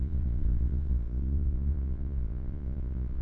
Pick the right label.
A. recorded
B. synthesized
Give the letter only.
B